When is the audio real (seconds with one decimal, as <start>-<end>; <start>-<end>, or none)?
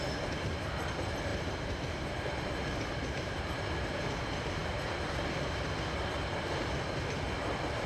0.0-1.3; 4.0-7.9